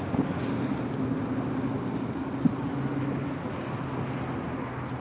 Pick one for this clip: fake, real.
real